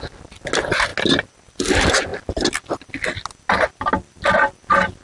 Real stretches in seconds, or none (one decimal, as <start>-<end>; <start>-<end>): 0.0-5.0